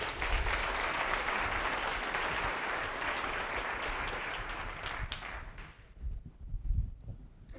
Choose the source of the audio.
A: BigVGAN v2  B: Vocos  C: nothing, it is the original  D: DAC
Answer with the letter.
C